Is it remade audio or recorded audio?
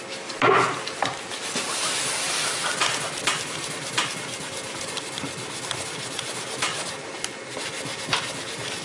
recorded